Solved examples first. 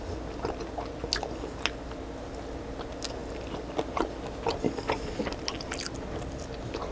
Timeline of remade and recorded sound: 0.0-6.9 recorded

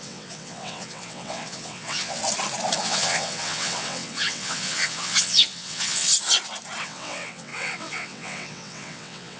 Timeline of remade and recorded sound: 0.0-2.2 remade; 2.2-2.8 recorded; 2.8-6.1 remade; 6.1-6.8 recorded; 6.8-9.4 remade

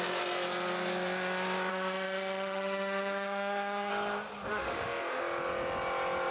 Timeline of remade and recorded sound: 0.0-1.7 recorded; 1.7-3.9 remade; 3.9-4.5 recorded; 4.5-5.2 remade; 5.2-6.3 recorded

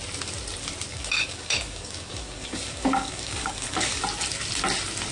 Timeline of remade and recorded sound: 0.0-0.9 recorded; 0.9-4.0 remade; 4.0-5.1 recorded

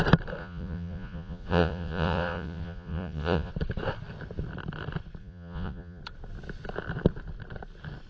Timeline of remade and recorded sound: 0.0-0.4 recorded; 0.4-3.5 remade; 3.5-5.2 recorded; 5.2-6.0 remade; 6.0-8.1 recorded

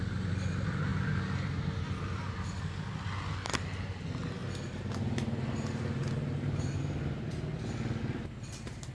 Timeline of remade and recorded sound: 0.0-8.9 recorded

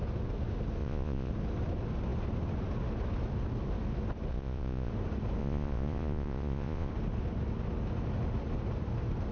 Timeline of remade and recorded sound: 0.0-0.8 recorded; 0.8-1.3 remade; 1.3-4.3 recorded; 4.3-4.9 remade; 4.9-5.4 recorded; 5.4-6.9 remade; 6.9-9.3 recorded